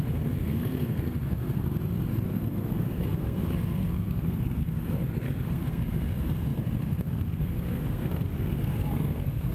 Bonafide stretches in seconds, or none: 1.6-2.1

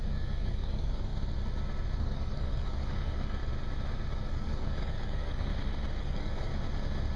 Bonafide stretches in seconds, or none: 1.1-2.0; 3.4-4.1; 5.5-6.0; 6.5-7.2

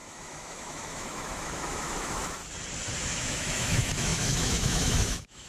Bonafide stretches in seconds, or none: 2.4-3.0

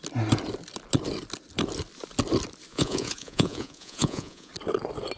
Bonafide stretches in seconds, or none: 0.0-2.7; 4.5-5.2